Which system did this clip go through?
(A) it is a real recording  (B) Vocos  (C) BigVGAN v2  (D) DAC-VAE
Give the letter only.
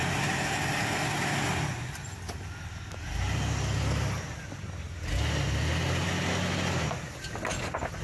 A